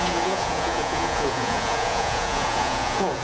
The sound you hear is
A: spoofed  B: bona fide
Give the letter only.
A